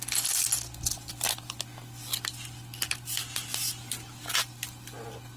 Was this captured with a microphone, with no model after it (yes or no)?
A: yes